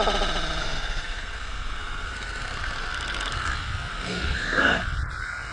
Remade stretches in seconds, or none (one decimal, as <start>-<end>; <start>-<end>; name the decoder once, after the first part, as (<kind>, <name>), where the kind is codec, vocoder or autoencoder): 0.6-3.5 (codec, SNAC); 3.9-4.8